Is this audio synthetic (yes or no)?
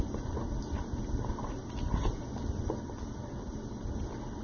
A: no